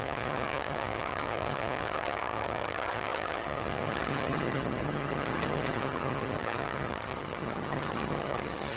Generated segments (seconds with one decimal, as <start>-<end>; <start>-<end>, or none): 0.0-8.8